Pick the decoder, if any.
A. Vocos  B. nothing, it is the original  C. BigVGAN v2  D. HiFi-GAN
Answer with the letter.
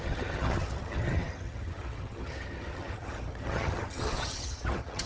D